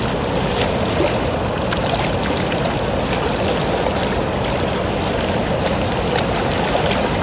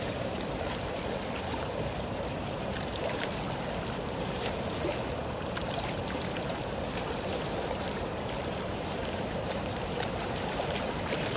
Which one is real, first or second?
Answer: first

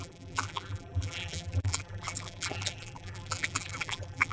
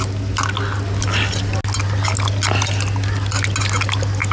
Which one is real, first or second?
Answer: second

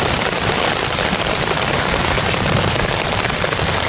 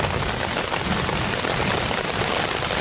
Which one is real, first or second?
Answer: second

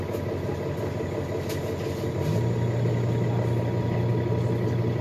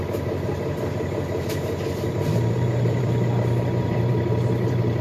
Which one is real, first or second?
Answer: first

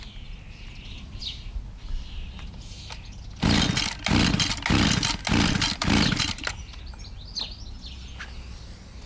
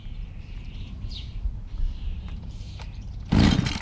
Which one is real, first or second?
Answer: first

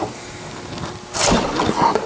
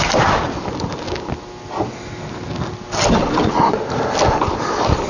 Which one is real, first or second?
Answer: second